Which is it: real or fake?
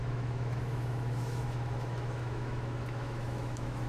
fake